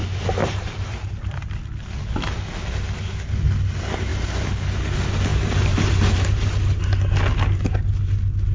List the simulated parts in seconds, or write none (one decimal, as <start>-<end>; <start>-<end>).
0.4-1.1; 4.1-4.8; 5.3-6.8